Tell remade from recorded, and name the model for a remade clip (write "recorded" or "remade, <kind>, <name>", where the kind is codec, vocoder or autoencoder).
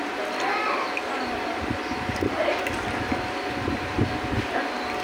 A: remade, vocoder, BigVGAN v2